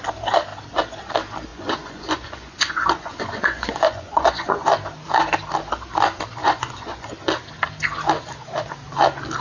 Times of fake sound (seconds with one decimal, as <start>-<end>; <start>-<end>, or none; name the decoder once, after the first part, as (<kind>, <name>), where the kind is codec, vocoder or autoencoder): 1.5-4.6 (vocoder, Vocos); 6.4-7.1